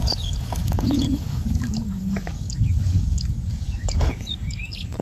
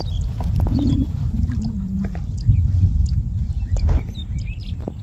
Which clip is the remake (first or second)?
first